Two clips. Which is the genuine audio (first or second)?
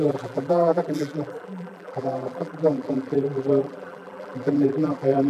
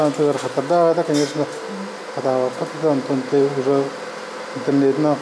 second